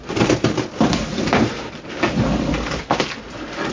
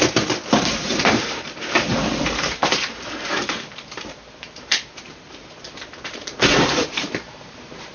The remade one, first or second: second